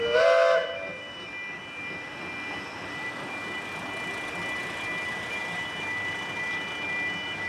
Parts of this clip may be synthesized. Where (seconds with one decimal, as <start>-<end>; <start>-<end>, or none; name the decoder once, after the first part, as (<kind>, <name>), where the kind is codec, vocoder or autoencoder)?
none

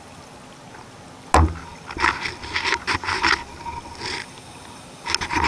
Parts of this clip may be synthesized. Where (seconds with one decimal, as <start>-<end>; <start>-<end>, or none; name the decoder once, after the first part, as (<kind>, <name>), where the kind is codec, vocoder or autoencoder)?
none

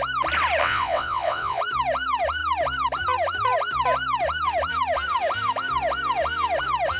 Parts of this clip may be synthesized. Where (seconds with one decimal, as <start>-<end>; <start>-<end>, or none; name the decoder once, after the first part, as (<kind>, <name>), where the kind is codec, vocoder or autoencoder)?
0.6-1.6 (vocoder, WaveNeXt)